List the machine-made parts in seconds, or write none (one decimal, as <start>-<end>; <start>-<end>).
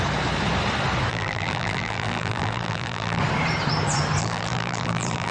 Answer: 1.1-3.2; 4.2-5.3